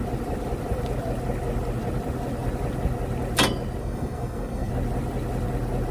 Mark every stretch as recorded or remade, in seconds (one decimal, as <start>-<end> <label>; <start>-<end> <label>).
0.0-3.8 recorded; 3.8-4.7 remade; 4.7-5.9 recorded